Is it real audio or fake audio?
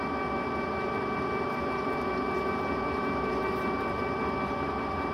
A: fake